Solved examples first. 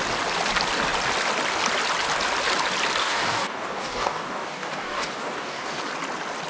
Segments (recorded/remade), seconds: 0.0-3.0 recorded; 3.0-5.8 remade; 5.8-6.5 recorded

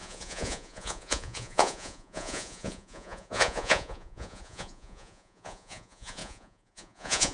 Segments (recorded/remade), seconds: 0.0-7.3 remade